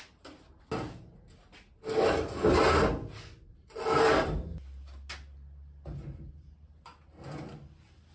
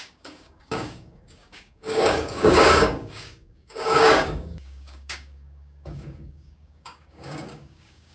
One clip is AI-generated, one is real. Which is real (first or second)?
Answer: first